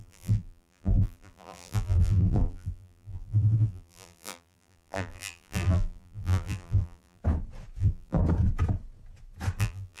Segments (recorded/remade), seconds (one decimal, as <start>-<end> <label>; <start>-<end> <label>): 0.0-7.2 remade; 7.2-7.8 recorded; 7.8-8.2 remade; 8.2-9.6 recorded; 9.6-10.0 remade